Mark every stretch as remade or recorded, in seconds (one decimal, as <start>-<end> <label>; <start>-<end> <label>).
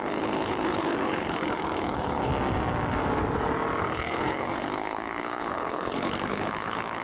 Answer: 0.0-2.3 remade; 2.3-3.8 recorded; 3.8-7.0 remade